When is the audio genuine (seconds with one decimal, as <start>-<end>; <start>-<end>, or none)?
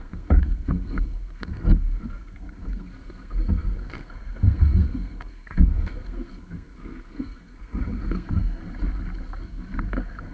8.6-9.4